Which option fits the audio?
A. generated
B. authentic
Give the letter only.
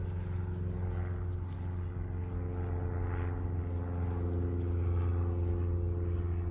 B